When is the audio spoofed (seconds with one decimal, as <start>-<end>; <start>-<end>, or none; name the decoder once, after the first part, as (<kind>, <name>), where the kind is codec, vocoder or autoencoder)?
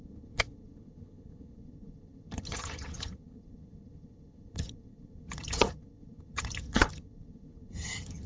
0.0-8.3 (vocoder, HiFi-GAN)